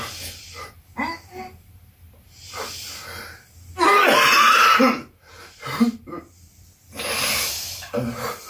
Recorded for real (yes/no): yes